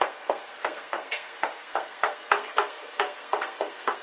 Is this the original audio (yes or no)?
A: no